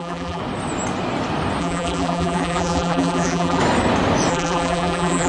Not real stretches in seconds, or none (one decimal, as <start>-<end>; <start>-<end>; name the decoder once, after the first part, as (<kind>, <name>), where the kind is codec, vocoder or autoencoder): 0.0-0.4 (vocoder, BigVGAN v2); 1.6-3.6; 4.3-5.3